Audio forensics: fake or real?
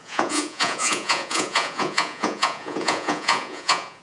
fake